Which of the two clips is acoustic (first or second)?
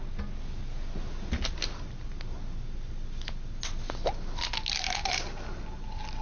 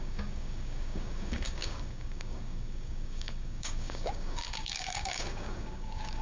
first